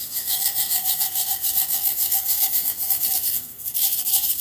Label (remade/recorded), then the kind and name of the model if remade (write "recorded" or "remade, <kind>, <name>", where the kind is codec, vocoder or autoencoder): remade, codec, SNAC